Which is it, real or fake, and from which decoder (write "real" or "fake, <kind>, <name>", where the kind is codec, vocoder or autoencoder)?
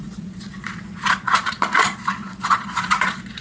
fake, vocoder, Vocos